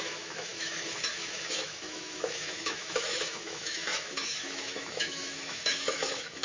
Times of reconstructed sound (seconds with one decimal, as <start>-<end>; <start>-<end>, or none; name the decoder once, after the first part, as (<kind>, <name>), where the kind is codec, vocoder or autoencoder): 0.0-6.4 (autoencoder, DAC-VAE)